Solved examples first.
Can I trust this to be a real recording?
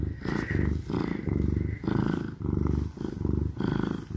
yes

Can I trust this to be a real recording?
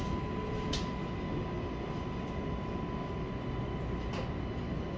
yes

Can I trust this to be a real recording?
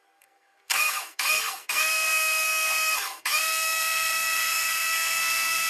no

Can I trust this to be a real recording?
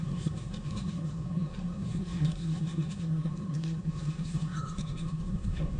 no